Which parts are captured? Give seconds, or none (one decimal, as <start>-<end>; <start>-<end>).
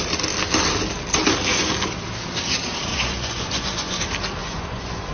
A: 0.0-2.9; 4.0-4.4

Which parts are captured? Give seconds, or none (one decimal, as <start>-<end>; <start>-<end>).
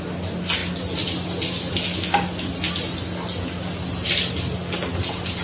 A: 0.0-5.4